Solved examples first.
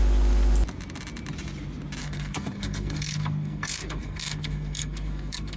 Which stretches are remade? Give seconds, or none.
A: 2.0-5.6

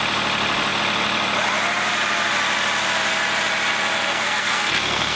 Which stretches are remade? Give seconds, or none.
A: 4.1-5.2

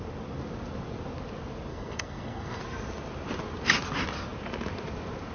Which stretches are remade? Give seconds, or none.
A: 1.7-2.6

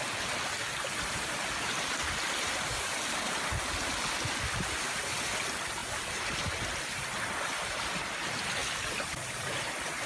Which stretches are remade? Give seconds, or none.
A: none

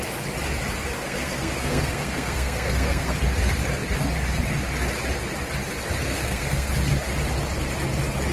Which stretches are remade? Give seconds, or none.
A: 1.0-3.2; 6.1-6.7

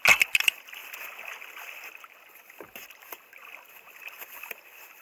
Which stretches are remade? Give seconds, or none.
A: none

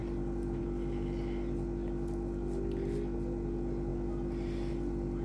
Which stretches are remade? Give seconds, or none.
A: none

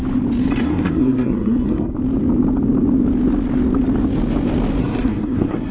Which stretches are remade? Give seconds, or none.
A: 0.6-1.9; 4.8-5.7